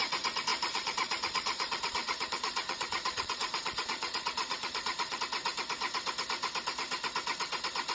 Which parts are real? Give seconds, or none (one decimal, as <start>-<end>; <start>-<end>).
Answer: 0.0-0.5; 5.2-7.9